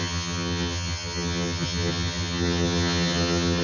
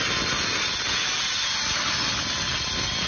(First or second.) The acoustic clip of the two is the second